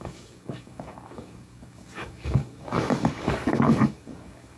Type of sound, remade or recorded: remade